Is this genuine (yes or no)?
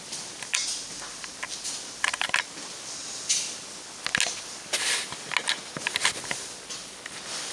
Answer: yes